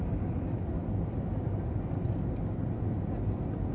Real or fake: real